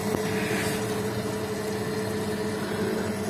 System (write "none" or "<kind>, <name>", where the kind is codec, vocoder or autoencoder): none